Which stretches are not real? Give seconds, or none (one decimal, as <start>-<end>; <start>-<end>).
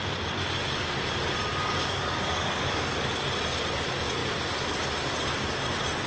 1.5-3.1